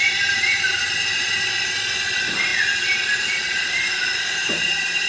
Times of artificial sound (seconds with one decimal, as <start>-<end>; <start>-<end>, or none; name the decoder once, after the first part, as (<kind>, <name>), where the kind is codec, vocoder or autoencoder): none